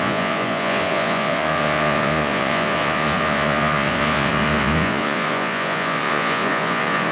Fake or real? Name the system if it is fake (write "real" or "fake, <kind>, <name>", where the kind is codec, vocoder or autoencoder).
fake, vocoder, Vocos